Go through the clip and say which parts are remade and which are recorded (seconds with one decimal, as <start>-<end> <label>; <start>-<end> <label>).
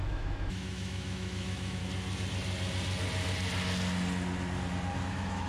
0.0-1.8 remade; 1.8-5.1 recorded; 5.1-5.5 remade